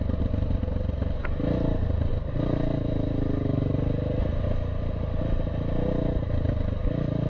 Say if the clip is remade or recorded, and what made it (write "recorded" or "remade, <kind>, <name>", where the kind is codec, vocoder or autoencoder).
recorded